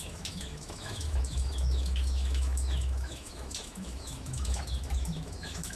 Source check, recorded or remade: remade